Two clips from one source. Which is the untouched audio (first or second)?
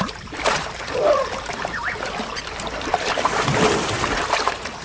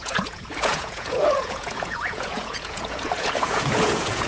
first